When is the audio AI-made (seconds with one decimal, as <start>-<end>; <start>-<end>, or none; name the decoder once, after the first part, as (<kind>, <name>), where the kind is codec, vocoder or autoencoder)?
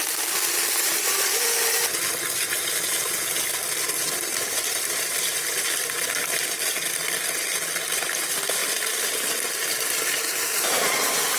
none